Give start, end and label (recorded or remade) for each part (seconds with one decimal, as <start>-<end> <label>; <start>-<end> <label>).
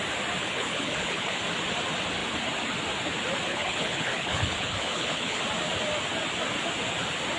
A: 0.0-0.4 recorded; 0.4-1.4 remade; 1.4-3.5 recorded; 3.5-5.4 remade; 5.4-7.4 recorded